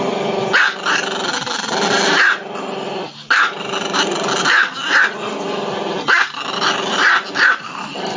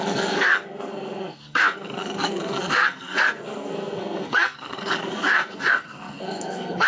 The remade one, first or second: second